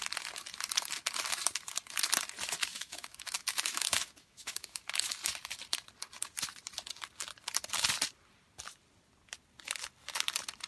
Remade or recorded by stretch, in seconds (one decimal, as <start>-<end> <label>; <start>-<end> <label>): 0.0-2.6 recorded; 2.6-4.8 remade; 4.8-10.7 recorded